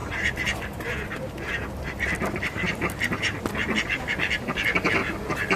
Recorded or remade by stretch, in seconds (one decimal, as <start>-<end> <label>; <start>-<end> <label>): 0.0-3.4 remade; 3.4-5.6 recorded